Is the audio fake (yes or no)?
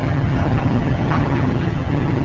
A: yes